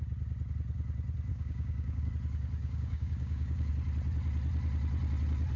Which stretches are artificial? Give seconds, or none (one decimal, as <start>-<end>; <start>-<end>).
1.3-2.1; 2.6-3.7